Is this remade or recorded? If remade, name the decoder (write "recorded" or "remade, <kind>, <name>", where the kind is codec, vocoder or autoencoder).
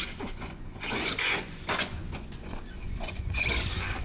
remade, vocoder, Vocos